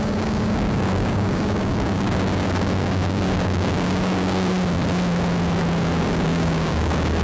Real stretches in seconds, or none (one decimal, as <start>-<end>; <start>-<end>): 4.5-6.0